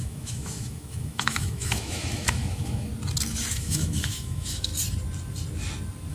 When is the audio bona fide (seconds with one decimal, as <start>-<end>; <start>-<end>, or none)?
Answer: 2.9-3.5; 4.7-6.1